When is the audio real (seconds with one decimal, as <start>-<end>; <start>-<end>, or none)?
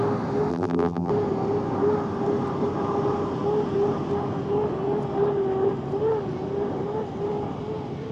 0.0-0.5; 1.1-8.1